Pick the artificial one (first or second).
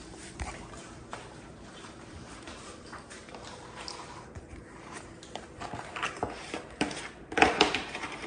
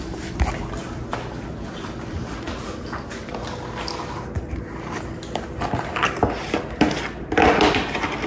first